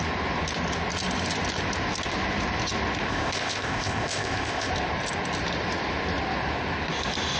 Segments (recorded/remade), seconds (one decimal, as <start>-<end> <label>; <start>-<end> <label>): 0.0-3.1 recorded; 3.1-4.7 remade; 4.7-7.4 recorded